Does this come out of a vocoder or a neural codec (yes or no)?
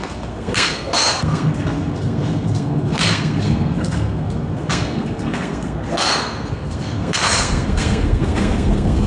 yes